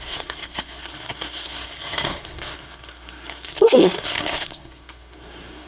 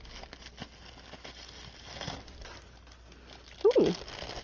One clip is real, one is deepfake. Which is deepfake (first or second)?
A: first